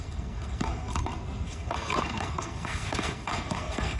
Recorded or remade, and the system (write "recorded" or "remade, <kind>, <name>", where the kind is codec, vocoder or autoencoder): remade, codec, SNAC